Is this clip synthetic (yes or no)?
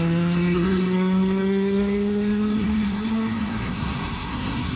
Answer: yes